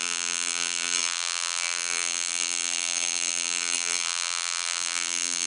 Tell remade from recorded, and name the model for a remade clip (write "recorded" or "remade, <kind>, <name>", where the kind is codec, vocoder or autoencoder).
remade, vocoder, BigVGAN v2